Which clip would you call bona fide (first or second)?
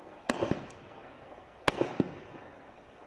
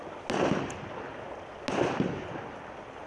second